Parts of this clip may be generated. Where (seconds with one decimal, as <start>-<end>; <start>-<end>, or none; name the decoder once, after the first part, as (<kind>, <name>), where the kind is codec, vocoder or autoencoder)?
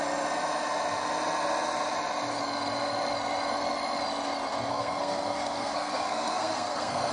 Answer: 4.7-7.1 (codec, SNAC)